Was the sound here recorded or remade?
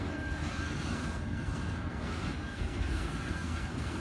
remade